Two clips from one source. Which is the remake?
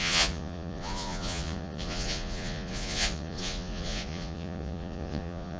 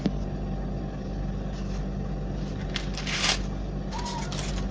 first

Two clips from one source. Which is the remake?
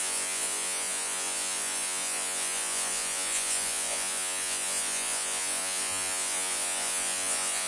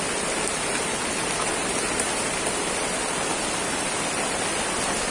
first